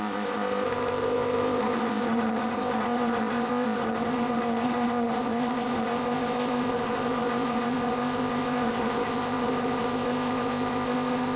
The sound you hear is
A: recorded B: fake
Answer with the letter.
B